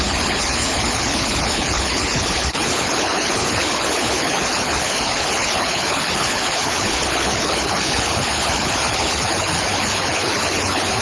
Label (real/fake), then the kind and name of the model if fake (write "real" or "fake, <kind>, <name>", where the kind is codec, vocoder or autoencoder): fake, codec, HILCodec